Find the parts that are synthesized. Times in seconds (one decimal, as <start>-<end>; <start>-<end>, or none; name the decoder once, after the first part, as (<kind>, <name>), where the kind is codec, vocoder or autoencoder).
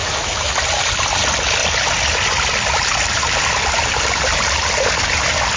0.0-0.5 (autoencoder, DAC-VAE)